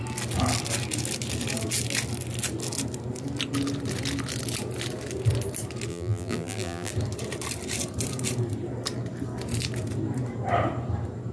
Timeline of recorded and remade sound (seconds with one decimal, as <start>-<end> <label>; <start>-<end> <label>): 0.0-5.9 recorded; 5.9-6.9 remade; 6.9-11.3 recorded